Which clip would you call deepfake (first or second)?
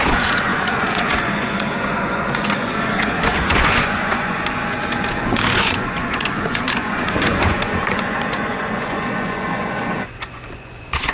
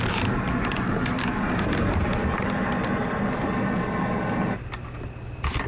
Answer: first